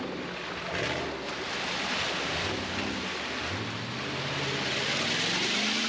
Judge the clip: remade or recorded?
recorded